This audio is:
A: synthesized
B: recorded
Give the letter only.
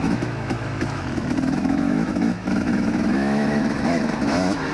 A